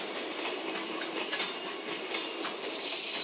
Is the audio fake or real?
real